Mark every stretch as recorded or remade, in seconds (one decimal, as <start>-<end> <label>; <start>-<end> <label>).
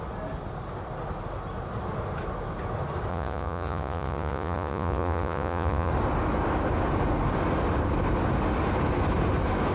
0.0-3.1 recorded; 3.1-5.9 remade; 5.9-9.7 recorded